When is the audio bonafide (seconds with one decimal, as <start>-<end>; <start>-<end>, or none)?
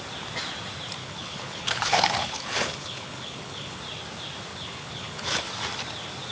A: 0.0-1.0; 3.8-4.5; 5.5-6.3